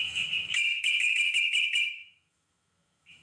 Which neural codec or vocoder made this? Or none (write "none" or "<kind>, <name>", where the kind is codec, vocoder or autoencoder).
autoencoder, DAC-VAE